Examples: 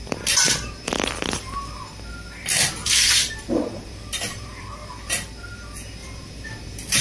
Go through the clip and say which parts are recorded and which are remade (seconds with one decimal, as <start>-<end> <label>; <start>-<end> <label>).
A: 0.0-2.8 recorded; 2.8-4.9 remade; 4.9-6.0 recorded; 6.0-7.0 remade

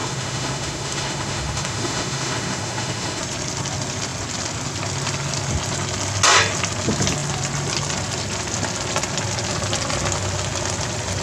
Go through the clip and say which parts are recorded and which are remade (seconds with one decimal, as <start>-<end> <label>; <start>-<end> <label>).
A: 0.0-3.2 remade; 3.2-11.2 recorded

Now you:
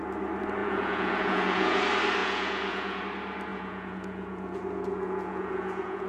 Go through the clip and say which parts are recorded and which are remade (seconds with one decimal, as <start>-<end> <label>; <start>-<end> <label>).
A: 0.0-0.6 recorded; 0.6-1.8 remade; 1.8-2.2 recorded; 2.2-3.0 remade; 3.0-3.5 recorded; 3.5-6.1 remade

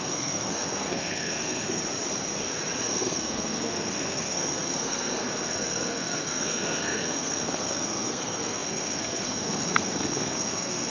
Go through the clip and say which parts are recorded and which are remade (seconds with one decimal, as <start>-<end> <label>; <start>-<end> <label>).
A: 0.0-1.8 remade; 1.8-2.8 recorded; 2.8-10.9 remade

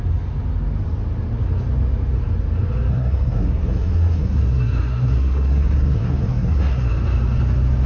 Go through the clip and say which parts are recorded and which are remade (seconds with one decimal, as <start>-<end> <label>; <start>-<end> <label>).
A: 0.0-2.9 recorded; 2.9-6.9 remade; 6.9-7.9 recorded